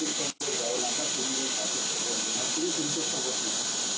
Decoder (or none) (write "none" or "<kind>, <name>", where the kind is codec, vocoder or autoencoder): none